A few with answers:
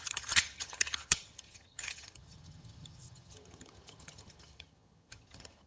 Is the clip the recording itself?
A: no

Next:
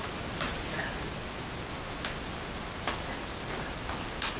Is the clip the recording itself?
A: yes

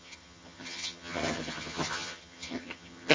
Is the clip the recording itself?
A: no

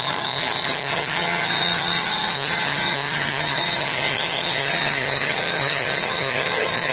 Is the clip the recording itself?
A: no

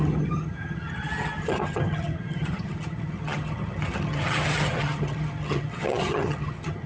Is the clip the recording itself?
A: no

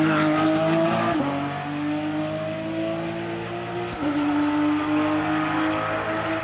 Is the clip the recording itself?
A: yes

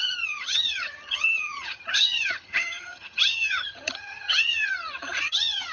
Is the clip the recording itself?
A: no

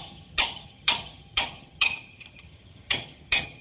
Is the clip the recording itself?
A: no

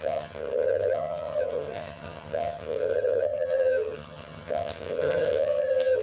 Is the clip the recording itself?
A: no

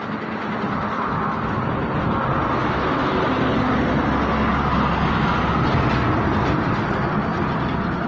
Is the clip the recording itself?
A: yes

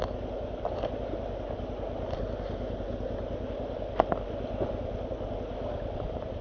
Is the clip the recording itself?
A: yes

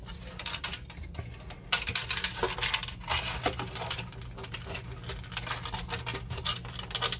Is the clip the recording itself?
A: yes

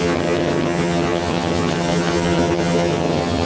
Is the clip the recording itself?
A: no